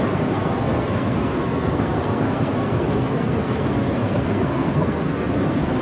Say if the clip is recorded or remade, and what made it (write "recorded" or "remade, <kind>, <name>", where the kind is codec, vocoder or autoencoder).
remade, codec, SNAC